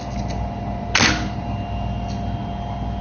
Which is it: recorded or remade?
recorded